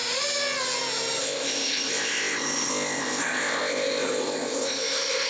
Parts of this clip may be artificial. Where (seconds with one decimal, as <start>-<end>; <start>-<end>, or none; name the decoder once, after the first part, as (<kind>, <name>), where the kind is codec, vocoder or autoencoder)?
1.2-5.3 (codec, ZipCodec)